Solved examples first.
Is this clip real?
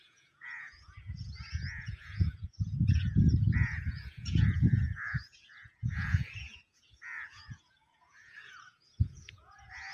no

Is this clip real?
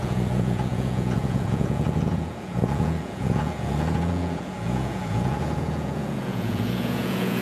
no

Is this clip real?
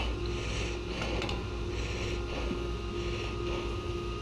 yes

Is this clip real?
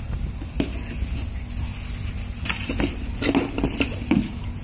yes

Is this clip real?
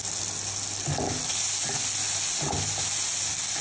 yes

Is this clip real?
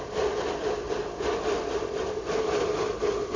yes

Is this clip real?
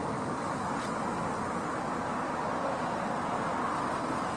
yes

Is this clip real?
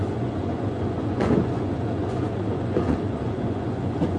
no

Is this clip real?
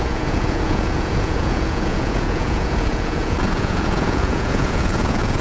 no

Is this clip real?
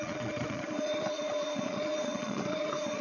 no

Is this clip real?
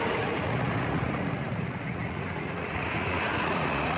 no